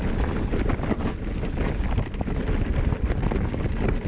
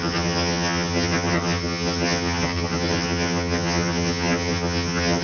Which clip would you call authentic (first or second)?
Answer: first